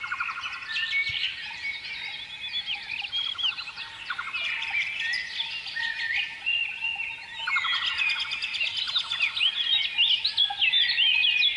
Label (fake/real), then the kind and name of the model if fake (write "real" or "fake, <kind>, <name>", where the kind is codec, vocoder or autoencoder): real